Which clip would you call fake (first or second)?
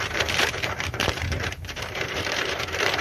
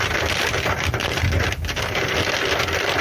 first